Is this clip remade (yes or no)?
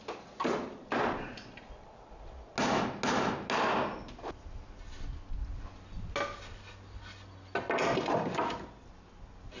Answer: no